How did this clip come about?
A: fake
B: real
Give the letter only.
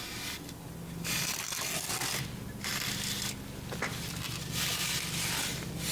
B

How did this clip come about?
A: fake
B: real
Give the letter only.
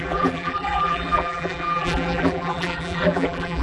A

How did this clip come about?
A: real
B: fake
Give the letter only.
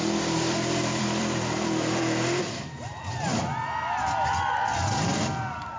B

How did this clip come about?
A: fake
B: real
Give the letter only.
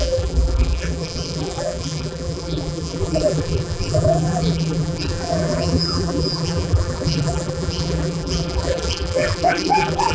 A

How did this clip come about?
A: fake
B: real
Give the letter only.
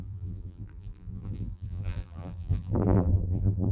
A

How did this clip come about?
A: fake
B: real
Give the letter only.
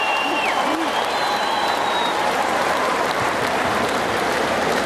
A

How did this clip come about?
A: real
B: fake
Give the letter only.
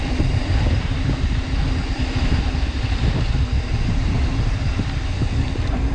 B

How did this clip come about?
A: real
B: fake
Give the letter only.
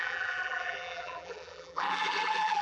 B